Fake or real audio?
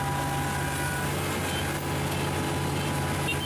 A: real